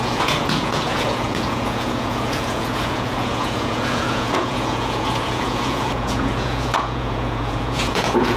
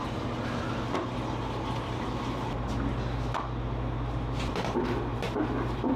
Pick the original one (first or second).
second